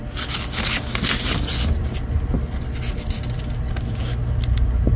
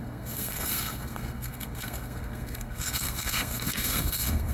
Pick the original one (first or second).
first